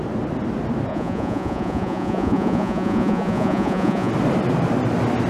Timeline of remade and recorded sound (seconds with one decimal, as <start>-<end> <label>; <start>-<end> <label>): 0.0-0.9 recorded; 0.9-4.1 remade; 4.1-5.3 recorded